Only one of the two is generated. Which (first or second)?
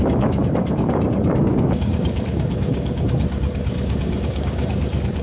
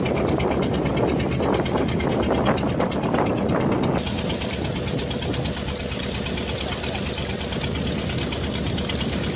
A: first